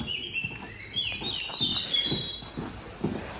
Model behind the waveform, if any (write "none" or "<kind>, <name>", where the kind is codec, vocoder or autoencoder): none